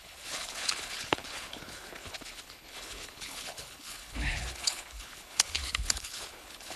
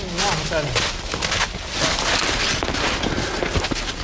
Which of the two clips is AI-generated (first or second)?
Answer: first